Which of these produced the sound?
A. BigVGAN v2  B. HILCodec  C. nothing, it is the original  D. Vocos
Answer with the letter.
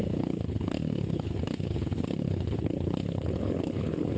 B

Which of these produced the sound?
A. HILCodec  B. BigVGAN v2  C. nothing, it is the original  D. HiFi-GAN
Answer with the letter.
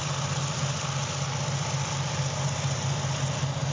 C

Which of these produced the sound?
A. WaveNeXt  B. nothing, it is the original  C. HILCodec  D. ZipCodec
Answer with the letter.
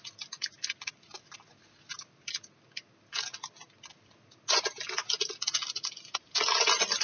B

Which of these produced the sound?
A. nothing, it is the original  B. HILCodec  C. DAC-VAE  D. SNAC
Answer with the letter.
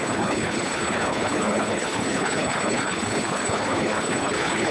B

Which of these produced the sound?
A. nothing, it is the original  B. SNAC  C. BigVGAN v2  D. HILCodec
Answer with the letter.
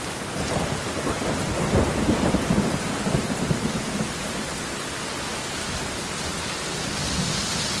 A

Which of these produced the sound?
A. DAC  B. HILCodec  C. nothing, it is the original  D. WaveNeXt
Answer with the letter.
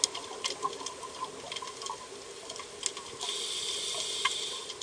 C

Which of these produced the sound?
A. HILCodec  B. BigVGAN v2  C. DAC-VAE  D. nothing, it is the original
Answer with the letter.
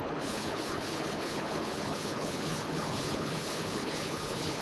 A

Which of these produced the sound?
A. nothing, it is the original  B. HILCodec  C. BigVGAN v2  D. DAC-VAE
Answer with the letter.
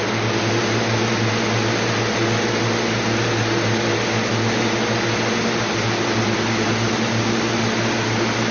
A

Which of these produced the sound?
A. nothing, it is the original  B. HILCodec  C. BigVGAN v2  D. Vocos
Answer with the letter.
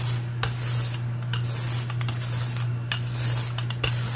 A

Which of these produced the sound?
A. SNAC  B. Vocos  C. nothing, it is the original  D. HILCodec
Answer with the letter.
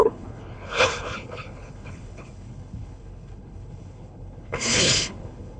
D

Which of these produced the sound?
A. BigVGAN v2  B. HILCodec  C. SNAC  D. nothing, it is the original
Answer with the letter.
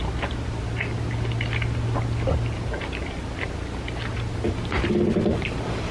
D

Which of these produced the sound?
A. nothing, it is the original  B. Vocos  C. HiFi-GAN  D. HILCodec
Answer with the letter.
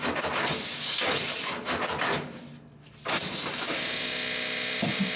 A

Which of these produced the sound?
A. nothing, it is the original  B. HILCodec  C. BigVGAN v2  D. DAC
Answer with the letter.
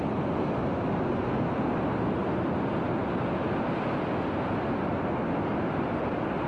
A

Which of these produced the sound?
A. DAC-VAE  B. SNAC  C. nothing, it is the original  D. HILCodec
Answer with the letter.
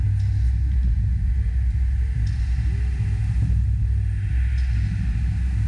C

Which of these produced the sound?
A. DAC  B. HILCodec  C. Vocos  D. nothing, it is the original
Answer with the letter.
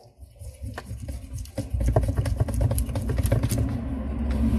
D